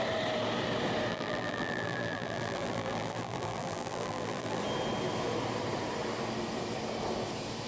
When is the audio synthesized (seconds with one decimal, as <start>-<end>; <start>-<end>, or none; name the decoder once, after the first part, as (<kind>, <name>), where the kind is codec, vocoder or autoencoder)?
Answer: 1.1-4.6 (vocoder, BigVGAN v2)